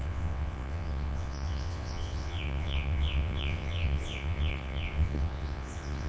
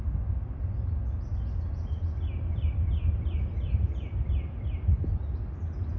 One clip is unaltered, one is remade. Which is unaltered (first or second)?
second